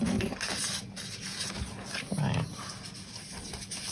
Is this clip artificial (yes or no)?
no